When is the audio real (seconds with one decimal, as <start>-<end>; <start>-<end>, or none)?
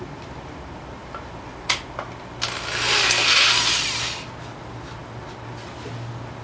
0.0-6.4